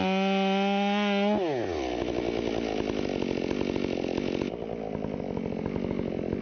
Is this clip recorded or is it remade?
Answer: recorded